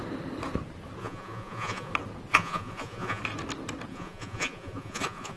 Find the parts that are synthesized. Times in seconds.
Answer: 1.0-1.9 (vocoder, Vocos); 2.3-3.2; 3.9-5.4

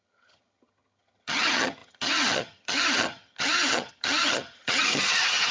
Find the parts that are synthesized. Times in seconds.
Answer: 0.0-5.5 (vocoder, HiFi-GAN)

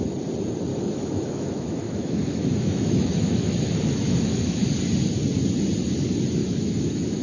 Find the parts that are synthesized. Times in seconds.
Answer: 0.7-4.7 (autoencoder, DAC-VAE); 6.4-7.2